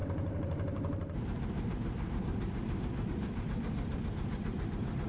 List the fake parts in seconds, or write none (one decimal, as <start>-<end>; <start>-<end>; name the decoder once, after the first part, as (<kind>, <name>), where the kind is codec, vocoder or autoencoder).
0.0-5.1 (vocoder, BigVGAN v2)